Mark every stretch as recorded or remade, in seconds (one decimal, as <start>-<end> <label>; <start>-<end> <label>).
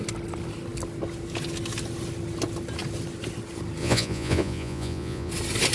0.0-3.8 recorded; 3.8-5.3 remade; 5.3-5.7 recorded